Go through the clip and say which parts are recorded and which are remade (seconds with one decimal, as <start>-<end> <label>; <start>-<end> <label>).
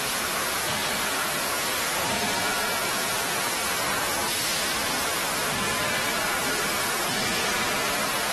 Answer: 0.0-4.1 remade; 4.1-8.3 recorded